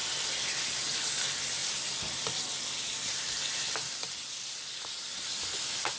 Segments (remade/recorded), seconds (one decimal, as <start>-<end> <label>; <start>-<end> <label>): 0.0-6.0 recorded